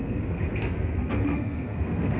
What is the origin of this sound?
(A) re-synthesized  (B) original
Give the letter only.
A